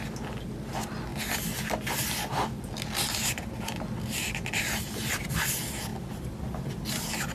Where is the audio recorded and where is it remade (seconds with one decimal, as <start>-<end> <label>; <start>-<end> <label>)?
0.0-7.3 recorded